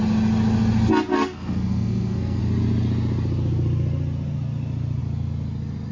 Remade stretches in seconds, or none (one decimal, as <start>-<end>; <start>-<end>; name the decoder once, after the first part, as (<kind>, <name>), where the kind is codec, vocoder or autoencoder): 1.1-2.4 (codec, SNAC)